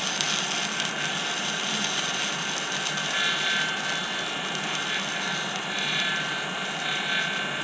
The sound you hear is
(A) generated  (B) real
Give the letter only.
B